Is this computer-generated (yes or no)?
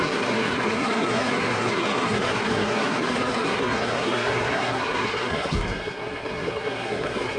yes